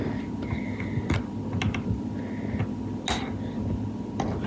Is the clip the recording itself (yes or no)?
yes